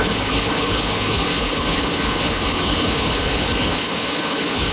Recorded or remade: remade